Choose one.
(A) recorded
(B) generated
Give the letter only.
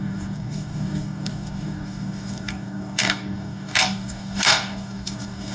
B